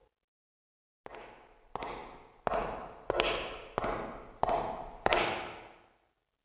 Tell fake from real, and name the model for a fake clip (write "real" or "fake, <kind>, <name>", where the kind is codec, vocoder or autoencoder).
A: real